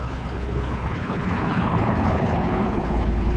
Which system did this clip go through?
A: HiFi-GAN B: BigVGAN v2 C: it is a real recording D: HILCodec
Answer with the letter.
D